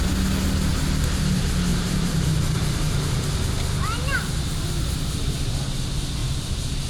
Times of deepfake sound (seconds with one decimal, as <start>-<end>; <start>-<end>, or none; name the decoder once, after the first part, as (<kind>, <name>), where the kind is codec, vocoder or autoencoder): 1.7-3.4 (vocoder, BigVGAN v2); 6.2-6.9